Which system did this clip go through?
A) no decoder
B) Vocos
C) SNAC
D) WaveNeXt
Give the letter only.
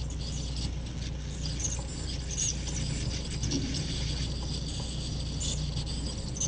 A